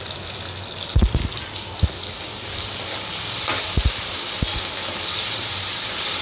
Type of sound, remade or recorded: recorded